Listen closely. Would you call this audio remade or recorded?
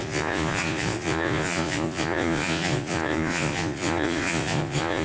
remade